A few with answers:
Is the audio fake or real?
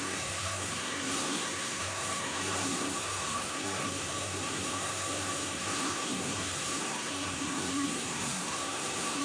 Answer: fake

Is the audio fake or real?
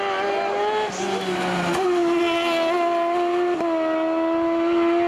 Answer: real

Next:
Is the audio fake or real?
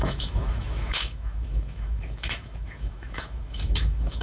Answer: fake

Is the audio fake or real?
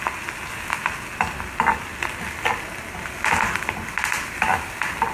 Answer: real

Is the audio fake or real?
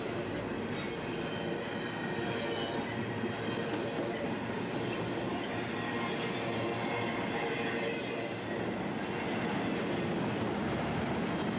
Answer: real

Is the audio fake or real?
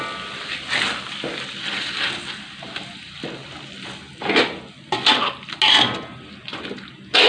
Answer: real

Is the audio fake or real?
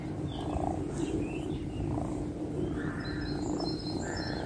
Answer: fake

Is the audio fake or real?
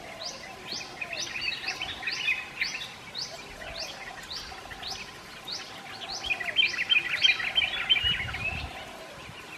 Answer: real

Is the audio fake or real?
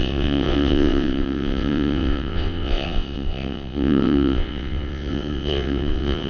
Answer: fake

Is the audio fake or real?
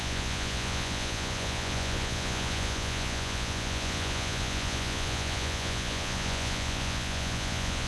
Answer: fake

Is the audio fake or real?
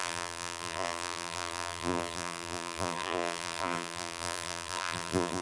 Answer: fake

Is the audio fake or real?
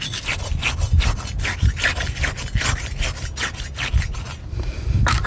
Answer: real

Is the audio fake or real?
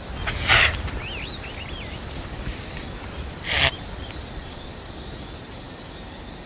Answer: fake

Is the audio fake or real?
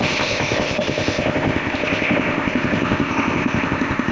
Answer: fake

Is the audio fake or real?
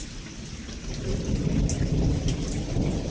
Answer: real